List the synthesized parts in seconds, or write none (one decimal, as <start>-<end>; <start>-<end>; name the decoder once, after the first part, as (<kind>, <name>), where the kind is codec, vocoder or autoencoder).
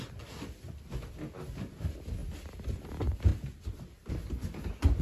none